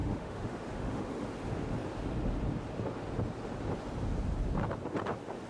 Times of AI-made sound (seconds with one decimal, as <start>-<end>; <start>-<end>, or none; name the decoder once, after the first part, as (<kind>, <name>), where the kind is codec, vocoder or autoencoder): 0.0-1.3 (autoencoder, DAC-VAE)